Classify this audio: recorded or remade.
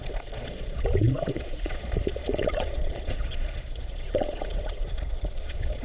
remade